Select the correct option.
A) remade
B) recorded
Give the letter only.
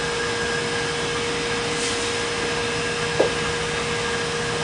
B